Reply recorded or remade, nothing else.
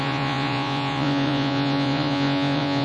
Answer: remade